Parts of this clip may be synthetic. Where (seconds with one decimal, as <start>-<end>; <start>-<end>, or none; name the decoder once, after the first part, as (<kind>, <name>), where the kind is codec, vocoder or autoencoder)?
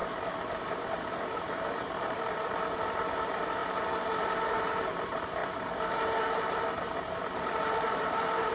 0.0-8.5 (vocoder, BigVGAN v2)